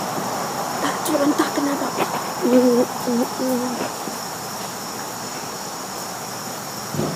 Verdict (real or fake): real